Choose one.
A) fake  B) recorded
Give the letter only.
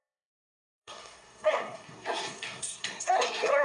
A